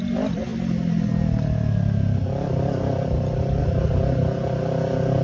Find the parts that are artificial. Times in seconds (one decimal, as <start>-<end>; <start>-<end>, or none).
none